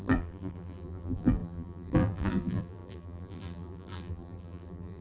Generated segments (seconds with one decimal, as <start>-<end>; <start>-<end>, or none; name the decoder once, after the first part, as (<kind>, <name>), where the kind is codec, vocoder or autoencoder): 0.0-5.0 (vocoder, BigVGAN v2)